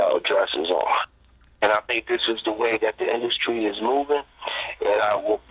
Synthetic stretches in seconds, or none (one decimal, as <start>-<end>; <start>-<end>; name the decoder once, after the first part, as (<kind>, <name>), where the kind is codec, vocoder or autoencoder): 0.0-0.4 (codec, SNAC); 1.9-3.7; 4.3-5.5